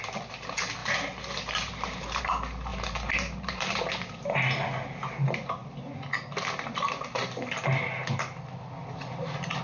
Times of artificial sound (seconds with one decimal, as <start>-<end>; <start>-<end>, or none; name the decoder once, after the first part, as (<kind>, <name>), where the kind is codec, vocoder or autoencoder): 0.8-2.2 (vocoder, BigVGAN v2); 2.7-3.9